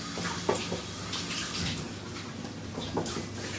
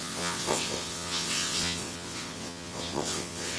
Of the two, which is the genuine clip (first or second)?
first